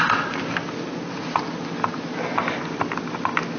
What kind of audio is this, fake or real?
real